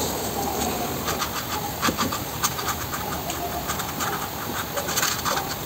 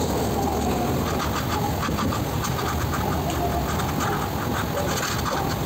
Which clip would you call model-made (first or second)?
first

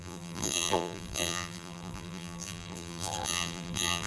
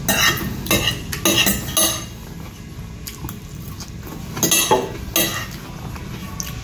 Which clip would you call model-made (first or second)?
first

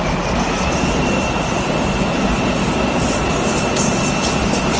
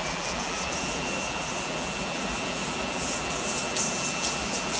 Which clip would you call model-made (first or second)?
second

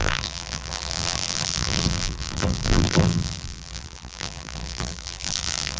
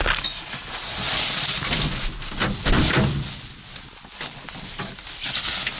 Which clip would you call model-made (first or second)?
first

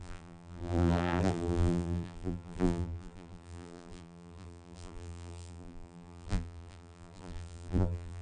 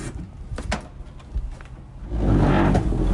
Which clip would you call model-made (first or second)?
first